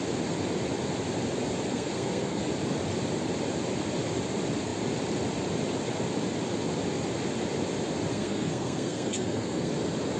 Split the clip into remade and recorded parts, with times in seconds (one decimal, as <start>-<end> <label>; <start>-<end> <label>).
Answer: 0.0-1.7 recorded; 1.7-2.4 remade; 2.4-8.1 recorded; 8.1-9.7 remade; 9.7-10.2 recorded